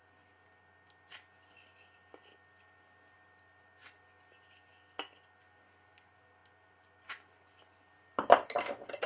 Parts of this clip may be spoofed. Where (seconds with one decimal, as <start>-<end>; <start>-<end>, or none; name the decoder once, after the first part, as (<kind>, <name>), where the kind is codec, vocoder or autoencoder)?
none